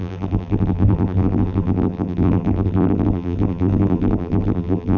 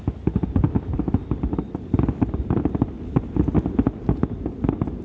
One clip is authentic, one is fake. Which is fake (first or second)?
first